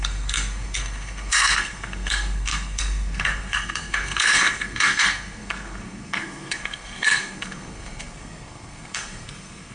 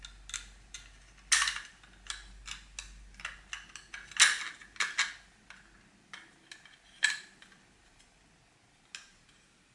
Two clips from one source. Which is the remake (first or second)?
first